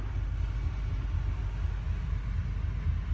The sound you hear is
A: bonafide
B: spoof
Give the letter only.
A